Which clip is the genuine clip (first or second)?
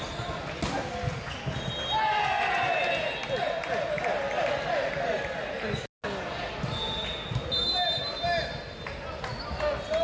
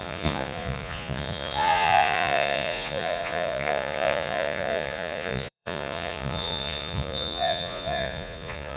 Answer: first